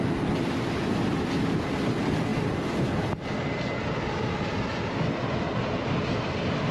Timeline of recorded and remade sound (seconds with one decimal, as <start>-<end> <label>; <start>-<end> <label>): 0.0-6.7 recorded

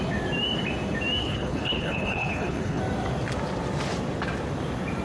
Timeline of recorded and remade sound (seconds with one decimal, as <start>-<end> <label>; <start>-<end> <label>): 0.0-1.2 recorded; 1.2-2.8 remade; 2.8-5.0 recorded

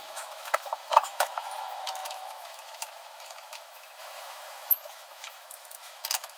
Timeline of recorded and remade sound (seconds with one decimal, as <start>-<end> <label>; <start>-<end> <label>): 0.0-6.4 remade